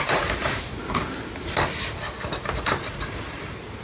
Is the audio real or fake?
real